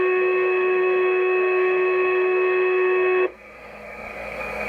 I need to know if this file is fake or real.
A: fake